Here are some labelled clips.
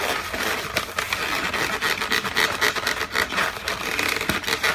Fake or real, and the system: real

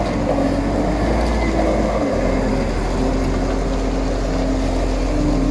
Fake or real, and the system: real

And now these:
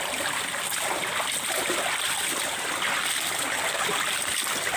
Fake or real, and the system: real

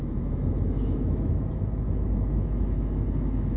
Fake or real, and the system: fake, autoencoder, DAC-VAE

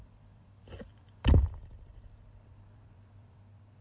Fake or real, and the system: fake, vocoder, BigVGAN v2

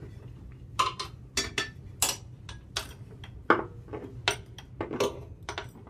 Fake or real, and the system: real